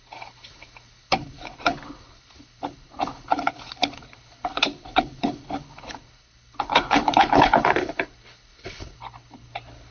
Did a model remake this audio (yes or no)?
yes